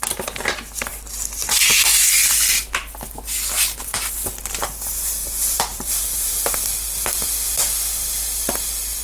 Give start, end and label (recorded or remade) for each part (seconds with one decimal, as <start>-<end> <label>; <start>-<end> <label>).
0.0-5.7 recorded; 5.7-6.5 remade; 6.5-9.0 recorded